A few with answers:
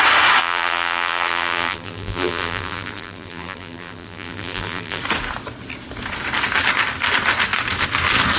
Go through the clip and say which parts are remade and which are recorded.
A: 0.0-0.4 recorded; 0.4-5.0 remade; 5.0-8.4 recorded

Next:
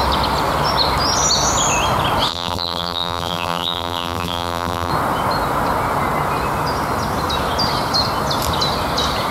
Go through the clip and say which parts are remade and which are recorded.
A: 0.0-2.3 recorded; 2.3-4.9 remade; 4.9-9.3 recorded

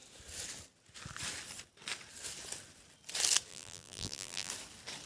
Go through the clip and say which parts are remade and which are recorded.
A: 0.0-3.5 recorded; 3.5-4.5 remade; 4.5-5.1 recorded

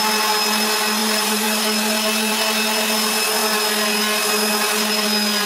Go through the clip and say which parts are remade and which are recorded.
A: 0.0-1.0 recorded; 1.0-1.6 remade; 1.6-5.5 recorded

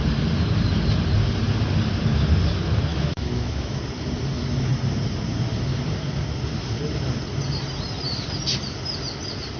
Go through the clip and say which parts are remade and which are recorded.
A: 0.0-2.9 recorded; 2.9-3.8 remade; 3.8-9.6 recorded

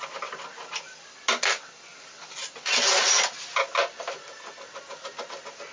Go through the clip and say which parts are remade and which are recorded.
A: 0.0-5.7 recorded

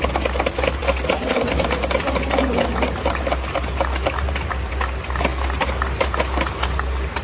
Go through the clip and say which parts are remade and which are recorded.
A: 0.0-7.2 recorded

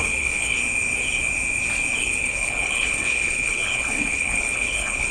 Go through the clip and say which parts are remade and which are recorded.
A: 0.0-0.6 remade; 0.6-2.0 recorded; 2.0-5.1 remade